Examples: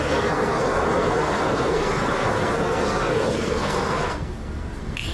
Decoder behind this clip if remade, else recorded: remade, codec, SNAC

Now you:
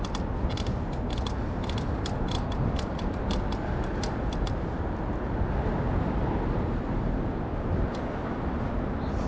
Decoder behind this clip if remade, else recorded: recorded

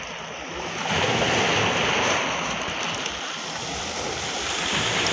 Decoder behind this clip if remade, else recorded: recorded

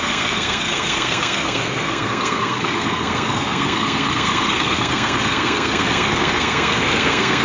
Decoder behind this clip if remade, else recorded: remade, codec, SNAC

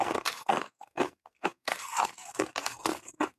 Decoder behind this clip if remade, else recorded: remade, codec, SNAC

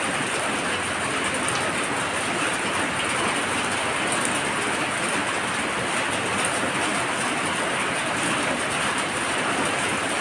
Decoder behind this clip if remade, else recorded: recorded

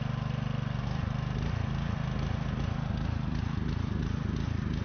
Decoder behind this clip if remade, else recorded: recorded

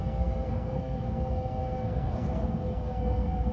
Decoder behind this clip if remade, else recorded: remade, codec, SNAC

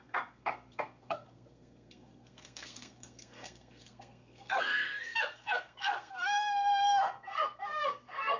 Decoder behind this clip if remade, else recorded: remade, codec, SNAC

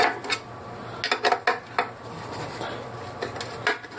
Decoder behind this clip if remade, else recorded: recorded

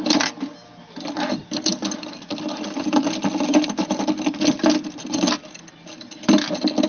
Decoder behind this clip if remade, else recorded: recorded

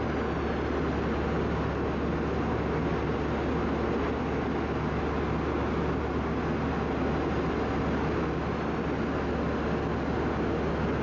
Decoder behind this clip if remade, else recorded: recorded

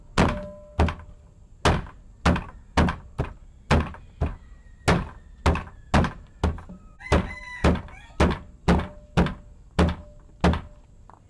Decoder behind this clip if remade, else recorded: recorded